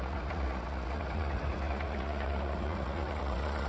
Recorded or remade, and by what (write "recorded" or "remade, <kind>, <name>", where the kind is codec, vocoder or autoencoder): remade, vocoder, Vocos